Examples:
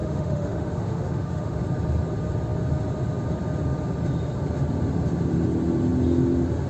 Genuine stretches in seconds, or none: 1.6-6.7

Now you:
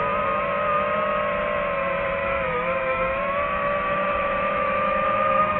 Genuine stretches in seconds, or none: 0.0-2.2

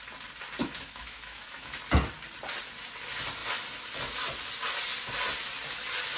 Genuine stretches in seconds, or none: 0.0-0.6; 1.8-6.2

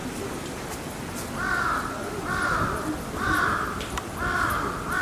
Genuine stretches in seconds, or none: 0.0-5.0